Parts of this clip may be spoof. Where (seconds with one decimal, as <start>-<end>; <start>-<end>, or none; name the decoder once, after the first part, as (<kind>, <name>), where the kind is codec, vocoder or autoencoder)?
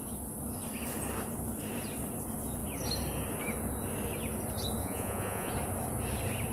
4.8-5.5 (vocoder, Vocos)